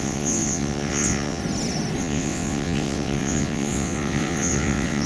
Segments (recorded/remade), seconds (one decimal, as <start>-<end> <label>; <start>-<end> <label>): 0.0-1.4 remade; 1.4-2.0 recorded; 2.0-5.1 remade

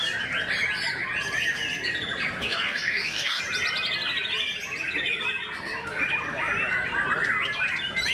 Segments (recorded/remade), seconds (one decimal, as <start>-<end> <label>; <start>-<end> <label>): 0.0-2.4 recorded; 2.4-3.4 remade; 3.4-8.1 recorded

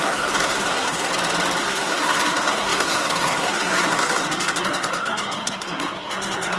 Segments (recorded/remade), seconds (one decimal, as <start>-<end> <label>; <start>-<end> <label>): 0.0-1.1 remade; 1.1-1.6 recorded; 1.6-6.6 remade

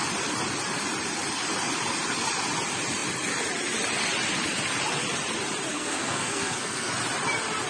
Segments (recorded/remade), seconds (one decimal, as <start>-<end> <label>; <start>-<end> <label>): 0.0-5.7 recorded; 5.7-6.9 remade; 6.9-7.7 recorded

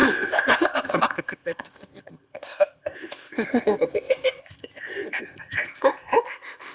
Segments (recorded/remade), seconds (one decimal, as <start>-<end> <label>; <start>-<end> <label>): 0.0-6.7 remade

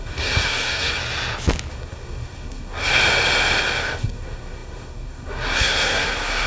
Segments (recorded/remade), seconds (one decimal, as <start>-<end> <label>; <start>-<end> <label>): 0.0-1.0 remade; 1.0-1.7 recorded; 1.7-2.9 remade; 2.9-3.8 recorded; 3.8-6.5 remade

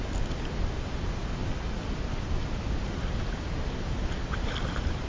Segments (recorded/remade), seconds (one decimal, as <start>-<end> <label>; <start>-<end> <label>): 0.0-5.1 recorded